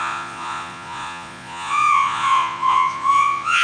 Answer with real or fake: fake